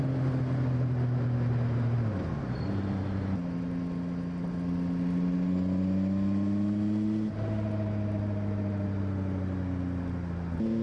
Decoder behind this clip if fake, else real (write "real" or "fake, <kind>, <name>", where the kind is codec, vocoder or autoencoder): real